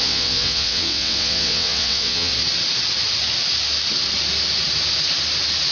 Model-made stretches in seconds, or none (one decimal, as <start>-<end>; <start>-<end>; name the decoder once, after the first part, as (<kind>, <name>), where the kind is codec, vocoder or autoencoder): 0.0-2.3 (vocoder, WaveNeXt)